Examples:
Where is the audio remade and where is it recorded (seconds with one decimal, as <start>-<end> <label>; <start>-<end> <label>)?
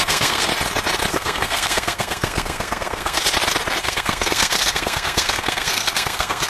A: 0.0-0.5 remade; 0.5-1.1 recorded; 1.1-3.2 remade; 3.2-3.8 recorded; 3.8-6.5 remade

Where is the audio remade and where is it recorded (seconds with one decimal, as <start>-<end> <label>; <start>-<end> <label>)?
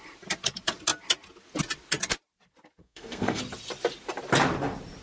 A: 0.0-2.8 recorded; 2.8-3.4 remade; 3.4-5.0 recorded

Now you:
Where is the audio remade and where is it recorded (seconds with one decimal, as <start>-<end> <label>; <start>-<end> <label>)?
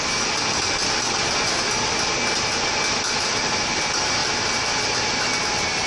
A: 0.0-5.9 recorded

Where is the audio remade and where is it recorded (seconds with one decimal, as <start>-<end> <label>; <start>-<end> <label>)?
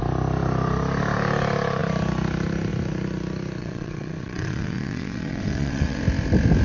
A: 0.0-3.6 recorded; 3.6-6.0 remade; 6.0-6.6 recorded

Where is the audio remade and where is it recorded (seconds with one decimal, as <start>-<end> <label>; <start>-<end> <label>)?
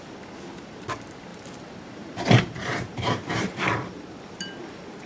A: 0.0-1.3 recorded; 1.3-3.6 remade; 3.6-5.1 recorded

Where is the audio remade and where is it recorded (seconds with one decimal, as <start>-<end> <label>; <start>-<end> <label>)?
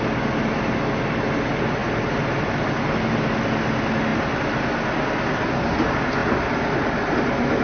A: 0.0-7.6 recorded